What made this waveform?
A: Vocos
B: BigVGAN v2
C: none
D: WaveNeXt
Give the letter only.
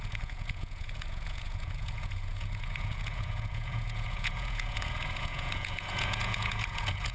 A